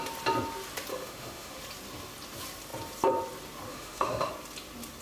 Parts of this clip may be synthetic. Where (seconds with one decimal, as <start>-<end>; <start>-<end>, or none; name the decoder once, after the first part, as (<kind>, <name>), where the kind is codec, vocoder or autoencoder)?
0.9-1.6 (autoencoder, DAC-VAE); 3.7-4.3